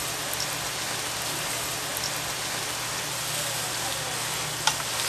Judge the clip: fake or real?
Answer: real